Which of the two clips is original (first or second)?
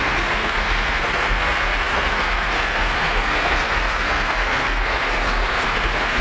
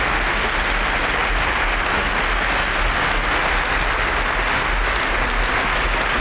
second